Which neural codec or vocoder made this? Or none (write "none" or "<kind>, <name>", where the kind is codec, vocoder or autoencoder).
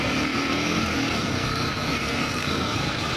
codec, SNAC